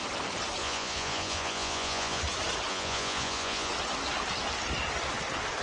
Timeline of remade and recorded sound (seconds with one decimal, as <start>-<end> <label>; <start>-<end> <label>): 0.0-0.6 recorded; 0.6-2.2 remade; 2.2-2.7 recorded; 2.7-3.7 remade; 3.7-5.6 recorded